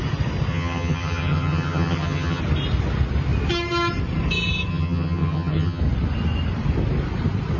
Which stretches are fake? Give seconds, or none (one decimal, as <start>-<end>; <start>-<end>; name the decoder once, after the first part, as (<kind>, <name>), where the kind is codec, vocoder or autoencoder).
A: 0.5-2.4 (vocoder, HiFi-GAN); 4.7-5.8